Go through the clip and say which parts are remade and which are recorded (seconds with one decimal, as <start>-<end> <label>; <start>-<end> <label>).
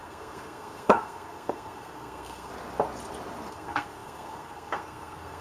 0.0-2.5 remade; 2.5-3.5 recorded; 3.5-5.4 remade